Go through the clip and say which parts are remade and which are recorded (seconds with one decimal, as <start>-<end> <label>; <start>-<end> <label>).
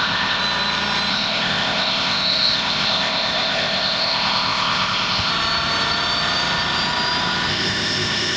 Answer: 0.0-0.4 remade; 0.4-1.1 recorded; 1.1-5.3 remade; 5.3-7.5 recorded; 7.5-8.4 remade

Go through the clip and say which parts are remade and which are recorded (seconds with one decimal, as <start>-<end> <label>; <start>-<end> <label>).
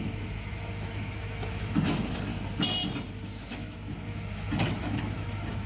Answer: 0.0-2.3 remade; 2.3-3.1 recorded; 3.1-5.7 remade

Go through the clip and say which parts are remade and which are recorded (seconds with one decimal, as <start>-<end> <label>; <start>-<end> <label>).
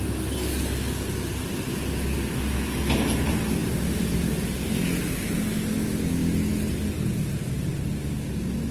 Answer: 0.0-8.7 recorded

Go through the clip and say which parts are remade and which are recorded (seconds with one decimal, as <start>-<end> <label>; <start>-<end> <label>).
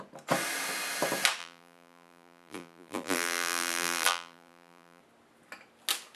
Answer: 0.0-1.4 recorded; 1.4-5.0 remade; 5.0-6.2 recorded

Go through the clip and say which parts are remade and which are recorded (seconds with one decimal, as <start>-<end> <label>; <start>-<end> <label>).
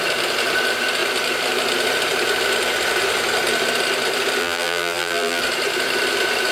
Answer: 0.0-4.4 recorded; 4.4-5.4 remade; 5.4-6.5 recorded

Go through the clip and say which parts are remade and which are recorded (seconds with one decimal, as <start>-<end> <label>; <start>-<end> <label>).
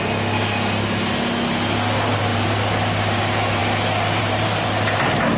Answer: 0.0-5.4 recorded